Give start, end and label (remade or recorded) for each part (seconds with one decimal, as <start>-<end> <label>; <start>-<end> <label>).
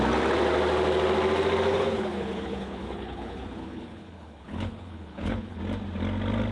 0.0-1.7 recorded; 1.7-5.6 remade; 5.6-6.5 recorded